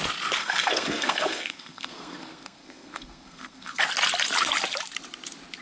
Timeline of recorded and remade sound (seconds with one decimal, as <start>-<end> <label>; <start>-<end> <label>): 0.0-0.4 recorded; 0.4-3.8 remade; 3.8-5.6 recorded

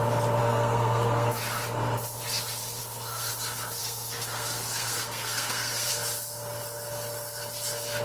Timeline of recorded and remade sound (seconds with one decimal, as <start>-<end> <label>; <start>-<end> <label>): 0.0-0.4 recorded; 0.4-1.4 remade; 1.4-2.8 recorded; 2.8-3.3 remade; 3.3-3.8 recorded; 3.8-5.9 remade; 5.9-8.0 recorded

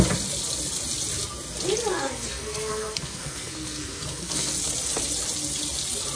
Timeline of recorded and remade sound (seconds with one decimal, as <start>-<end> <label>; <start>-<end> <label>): 0.0-1.9 recorded; 1.9-4.5 remade; 4.5-6.2 recorded

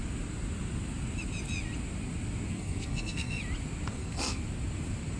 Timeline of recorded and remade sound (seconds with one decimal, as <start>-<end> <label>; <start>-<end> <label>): 0.0-2.5 recorded; 2.5-3.4 remade; 3.4-3.9 recorded; 3.9-4.4 remade; 4.4-5.2 recorded

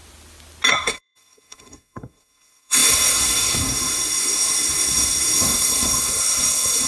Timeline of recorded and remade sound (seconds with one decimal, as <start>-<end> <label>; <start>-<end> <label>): 0.0-0.7 recorded; 0.7-6.9 remade

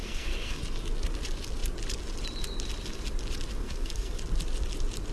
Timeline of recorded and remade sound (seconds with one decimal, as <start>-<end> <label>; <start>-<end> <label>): 0.0-0.6 remade; 0.6-3.6 recorded; 3.6-4.2 remade; 4.2-5.1 recorded